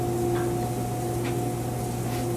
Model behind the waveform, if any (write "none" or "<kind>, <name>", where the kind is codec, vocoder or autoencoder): none